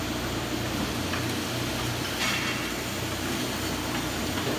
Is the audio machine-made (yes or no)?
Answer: no